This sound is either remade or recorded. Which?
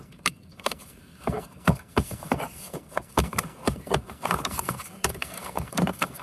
remade